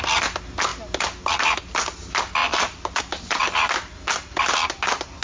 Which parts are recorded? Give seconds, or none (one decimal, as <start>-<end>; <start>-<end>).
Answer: 0.0-5.2